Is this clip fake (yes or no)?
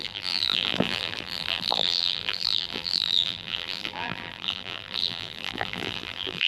yes